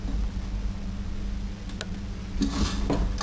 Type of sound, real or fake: real